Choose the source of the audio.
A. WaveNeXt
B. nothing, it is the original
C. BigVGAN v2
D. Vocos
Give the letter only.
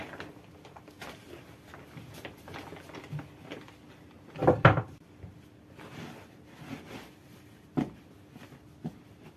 B